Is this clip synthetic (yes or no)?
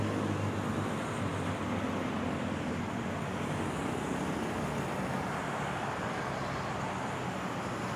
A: no